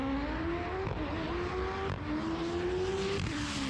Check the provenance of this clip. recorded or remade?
recorded